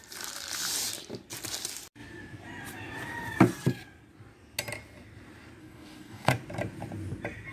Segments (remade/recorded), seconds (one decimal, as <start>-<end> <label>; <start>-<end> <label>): 0.0-5.6 recorded; 5.6-6.3 remade; 6.3-7.5 recorded